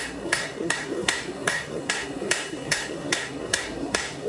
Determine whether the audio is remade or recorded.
remade